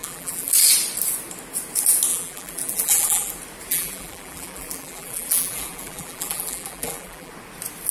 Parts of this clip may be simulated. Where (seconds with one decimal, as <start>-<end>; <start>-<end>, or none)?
0.0-0.5; 2.1-3.3; 3.7-7.3

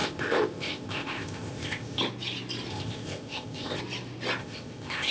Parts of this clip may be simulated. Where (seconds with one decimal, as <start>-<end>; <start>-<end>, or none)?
0.0-2.0; 2.7-3.8; 4.4-5.1

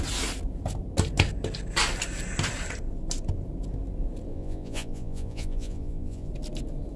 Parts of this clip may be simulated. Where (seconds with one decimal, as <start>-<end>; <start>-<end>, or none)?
4.3-6.3

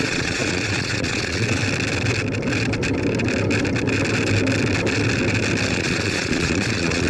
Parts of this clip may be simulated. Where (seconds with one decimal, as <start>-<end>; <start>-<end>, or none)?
0.0-1.6; 5.7-7.1